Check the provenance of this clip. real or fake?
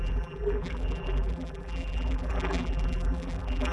fake